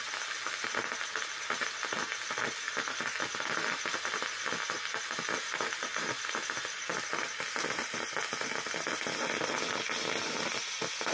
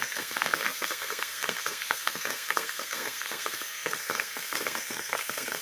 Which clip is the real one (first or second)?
first